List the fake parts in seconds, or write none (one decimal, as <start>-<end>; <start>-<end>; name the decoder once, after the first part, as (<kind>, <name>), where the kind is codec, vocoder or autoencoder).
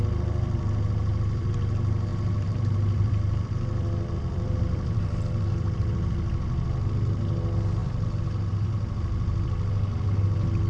0.0-10.7 (vocoder, BigVGAN v2)